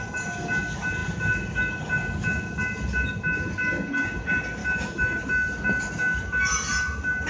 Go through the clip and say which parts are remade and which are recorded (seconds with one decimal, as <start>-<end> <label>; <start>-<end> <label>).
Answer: 0.0-4.6 recorded; 4.6-5.2 remade; 5.2-7.3 recorded